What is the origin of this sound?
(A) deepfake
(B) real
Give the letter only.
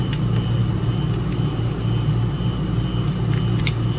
B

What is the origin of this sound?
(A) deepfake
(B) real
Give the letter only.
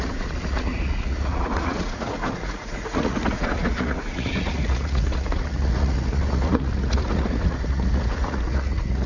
A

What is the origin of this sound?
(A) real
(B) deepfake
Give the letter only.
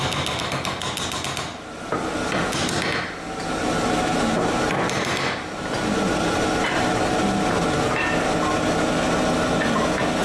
A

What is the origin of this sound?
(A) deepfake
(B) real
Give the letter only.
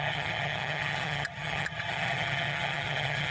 A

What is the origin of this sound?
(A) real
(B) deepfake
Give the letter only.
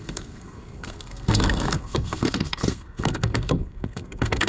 B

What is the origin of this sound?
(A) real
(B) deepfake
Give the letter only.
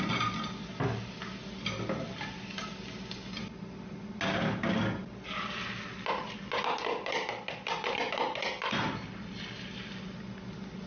A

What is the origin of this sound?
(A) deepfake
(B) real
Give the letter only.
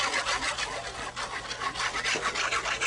B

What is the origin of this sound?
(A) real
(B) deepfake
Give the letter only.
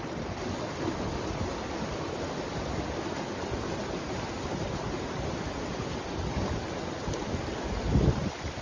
A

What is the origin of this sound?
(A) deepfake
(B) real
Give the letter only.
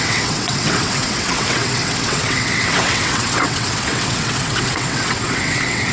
A